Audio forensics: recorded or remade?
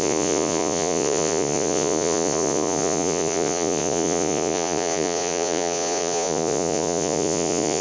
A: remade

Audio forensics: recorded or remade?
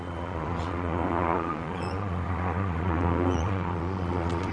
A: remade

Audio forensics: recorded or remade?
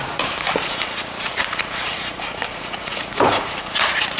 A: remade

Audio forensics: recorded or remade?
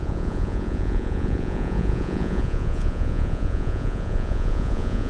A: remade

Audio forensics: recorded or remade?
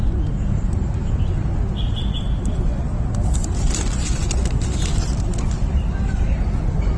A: recorded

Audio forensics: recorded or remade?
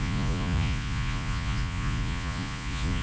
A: remade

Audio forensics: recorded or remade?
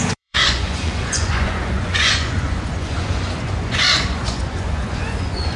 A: remade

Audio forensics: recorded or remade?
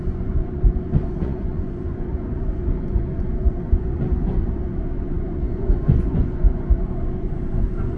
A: remade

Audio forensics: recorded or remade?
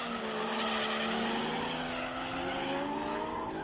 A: recorded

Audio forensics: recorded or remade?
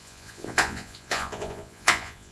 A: remade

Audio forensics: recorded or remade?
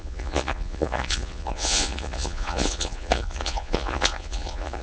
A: remade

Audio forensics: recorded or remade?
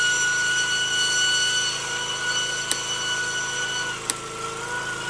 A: recorded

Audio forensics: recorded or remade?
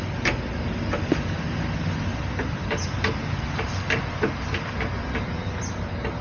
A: recorded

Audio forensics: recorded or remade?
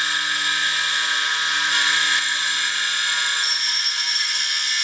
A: recorded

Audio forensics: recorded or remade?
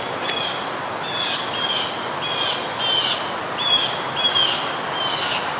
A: recorded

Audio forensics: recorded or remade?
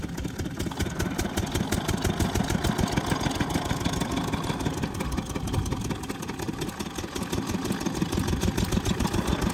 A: recorded